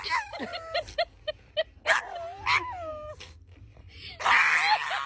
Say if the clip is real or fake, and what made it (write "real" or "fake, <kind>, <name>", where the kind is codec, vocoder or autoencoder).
real